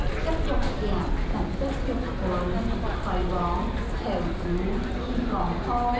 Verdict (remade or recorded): recorded